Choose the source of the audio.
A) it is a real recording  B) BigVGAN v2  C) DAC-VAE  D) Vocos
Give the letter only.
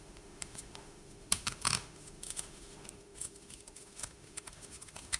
C